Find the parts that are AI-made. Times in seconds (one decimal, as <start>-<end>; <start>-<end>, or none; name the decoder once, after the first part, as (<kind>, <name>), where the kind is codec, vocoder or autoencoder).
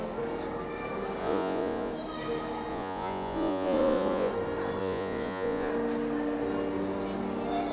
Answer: 1.2-1.9 (vocoder, Vocos); 2.7-4.3; 4.8-5.7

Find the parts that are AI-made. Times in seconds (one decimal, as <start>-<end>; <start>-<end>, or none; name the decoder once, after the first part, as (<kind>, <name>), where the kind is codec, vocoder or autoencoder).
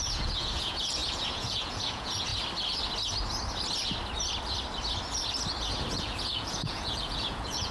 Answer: 0.0-2.3 (vocoder, Vocos); 5.9-7.7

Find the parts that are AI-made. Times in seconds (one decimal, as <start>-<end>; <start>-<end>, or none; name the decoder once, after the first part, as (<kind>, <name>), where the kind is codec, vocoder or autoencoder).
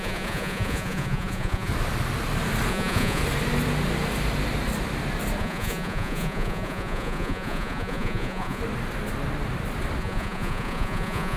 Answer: 0.0-1.7 (vocoder, Vocos); 2.7-3.2; 5.4-8.6; 10.0-11.4